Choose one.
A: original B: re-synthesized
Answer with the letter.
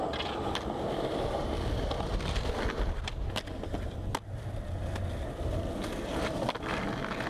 A